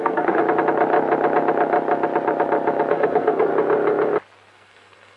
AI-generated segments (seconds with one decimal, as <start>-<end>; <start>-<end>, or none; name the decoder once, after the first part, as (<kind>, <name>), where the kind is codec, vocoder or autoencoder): 0.0-0.4 (codec, SNAC); 2.9-3.5; 4.5-5.2